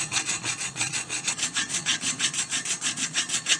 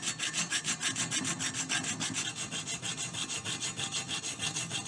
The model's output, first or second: first